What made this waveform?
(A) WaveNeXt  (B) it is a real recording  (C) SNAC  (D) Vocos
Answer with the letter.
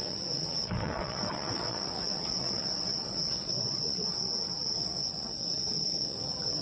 A